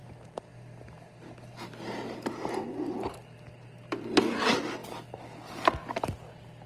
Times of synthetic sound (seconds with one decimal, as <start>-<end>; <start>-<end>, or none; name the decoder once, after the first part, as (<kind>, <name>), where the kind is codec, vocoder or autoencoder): none